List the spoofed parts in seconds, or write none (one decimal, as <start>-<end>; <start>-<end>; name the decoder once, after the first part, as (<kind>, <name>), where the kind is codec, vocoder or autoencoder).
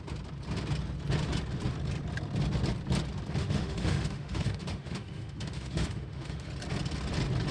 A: 3.4-6.5 (autoencoder, DAC-VAE)